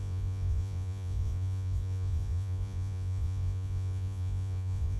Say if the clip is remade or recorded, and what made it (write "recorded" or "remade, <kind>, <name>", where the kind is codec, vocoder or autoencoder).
remade, vocoder, Vocos